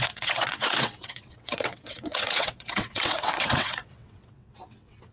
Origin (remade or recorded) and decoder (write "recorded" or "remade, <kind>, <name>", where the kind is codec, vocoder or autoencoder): remade, vocoder, WaveNeXt